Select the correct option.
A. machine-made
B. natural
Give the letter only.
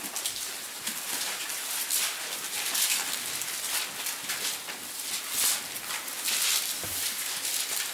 B